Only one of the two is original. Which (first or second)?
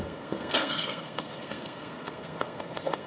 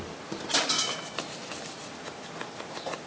second